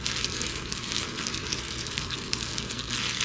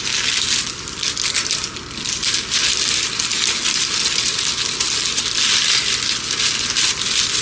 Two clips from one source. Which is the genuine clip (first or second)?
second